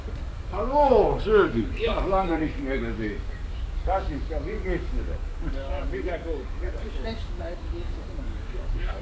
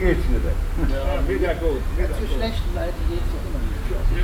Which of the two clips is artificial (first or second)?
first